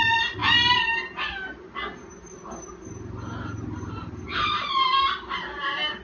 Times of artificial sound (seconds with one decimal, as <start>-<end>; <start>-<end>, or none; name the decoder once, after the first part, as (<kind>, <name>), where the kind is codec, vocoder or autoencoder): none